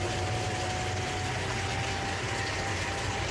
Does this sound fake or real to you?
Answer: real